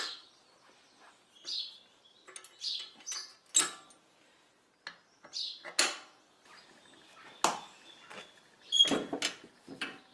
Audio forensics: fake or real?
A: real